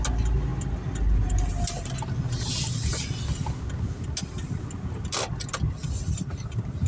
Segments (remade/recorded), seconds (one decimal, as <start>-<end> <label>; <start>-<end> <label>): 0.0-6.9 recorded